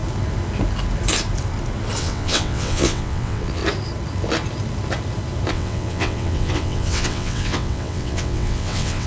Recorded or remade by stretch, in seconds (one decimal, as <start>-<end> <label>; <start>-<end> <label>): 0.0-2.0 recorded; 2.0-3.6 remade; 3.6-5.5 recorded; 5.5-9.1 remade